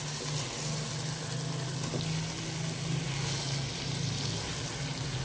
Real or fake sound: real